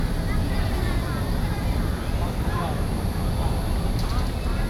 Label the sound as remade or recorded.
remade